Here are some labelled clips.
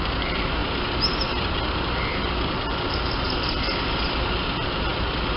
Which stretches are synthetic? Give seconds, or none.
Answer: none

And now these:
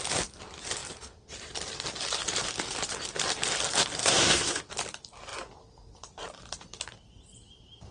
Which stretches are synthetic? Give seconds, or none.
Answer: 4.0-4.6 (codec, SNAC)

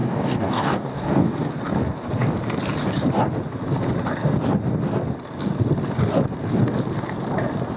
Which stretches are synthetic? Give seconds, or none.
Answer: 0.0-1.5 (codec, DAC)

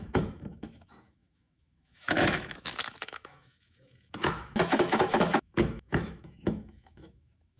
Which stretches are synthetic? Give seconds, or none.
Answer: 0.0-7.6 (autoencoder, DAC-VAE)

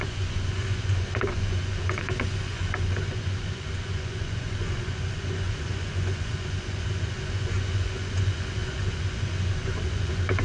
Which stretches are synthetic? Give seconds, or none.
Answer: 0.0-10.4 (vocoder, Vocos)

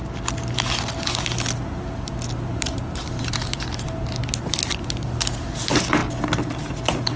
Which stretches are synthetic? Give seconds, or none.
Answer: 2.5-4.2 (vocoder, BigVGAN v2)